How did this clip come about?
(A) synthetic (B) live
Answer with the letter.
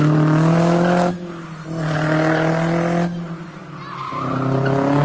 B